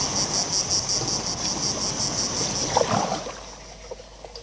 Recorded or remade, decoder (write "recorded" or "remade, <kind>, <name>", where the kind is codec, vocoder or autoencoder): recorded